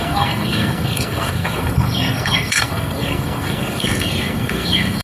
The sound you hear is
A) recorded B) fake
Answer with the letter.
B